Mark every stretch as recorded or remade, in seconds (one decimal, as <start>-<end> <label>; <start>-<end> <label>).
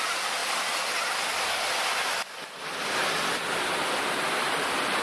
0.0-0.4 remade; 0.4-2.6 recorded; 2.6-5.0 remade